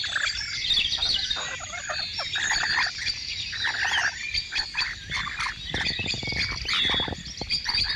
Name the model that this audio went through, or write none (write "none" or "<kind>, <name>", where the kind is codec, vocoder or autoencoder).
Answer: none